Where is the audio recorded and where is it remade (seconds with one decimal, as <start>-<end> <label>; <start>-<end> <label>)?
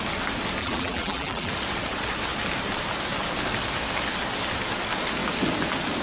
0.0-0.6 recorded; 0.6-1.5 remade; 1.5-6.0 recorded